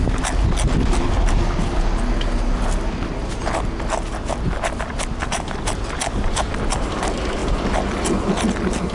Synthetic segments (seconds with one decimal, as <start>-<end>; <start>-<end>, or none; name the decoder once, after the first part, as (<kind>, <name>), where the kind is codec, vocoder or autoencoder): none